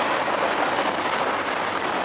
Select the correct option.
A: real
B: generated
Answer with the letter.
A